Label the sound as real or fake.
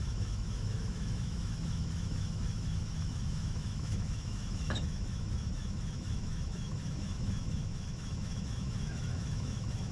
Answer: fake